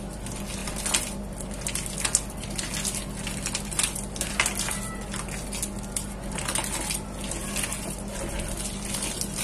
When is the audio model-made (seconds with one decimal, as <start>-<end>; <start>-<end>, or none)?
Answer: none